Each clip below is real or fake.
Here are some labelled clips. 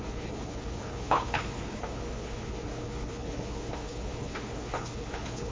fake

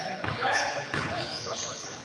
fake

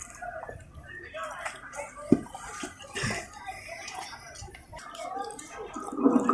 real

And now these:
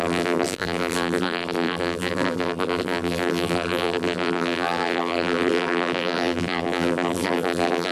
fake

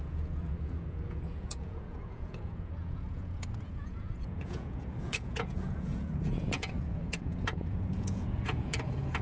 fake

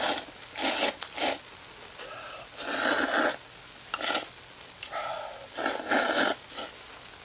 real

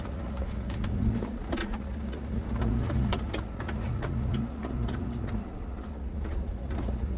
fake